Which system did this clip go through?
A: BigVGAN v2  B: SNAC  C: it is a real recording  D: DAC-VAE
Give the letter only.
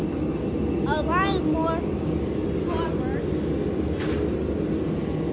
C